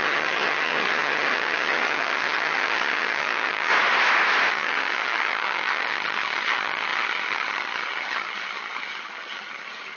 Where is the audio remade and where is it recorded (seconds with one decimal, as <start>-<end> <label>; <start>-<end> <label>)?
0.0-3.7 remade; 3.7-4.5 recorded; 4.5-10.0 remade